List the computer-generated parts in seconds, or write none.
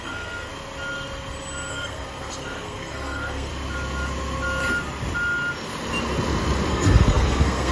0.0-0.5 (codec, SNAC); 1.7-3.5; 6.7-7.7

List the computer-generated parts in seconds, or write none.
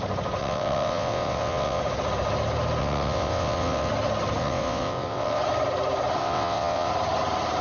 0.4-1.8 (vocoder, WaveNeXt); 2.8-3.9; 4.4-5.4; 6.2-6.9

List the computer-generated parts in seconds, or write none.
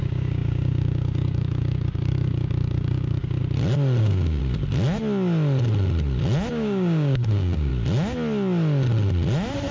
0.0-3.4 (codec, DAC); 4.0-4.4; 6.5-7.7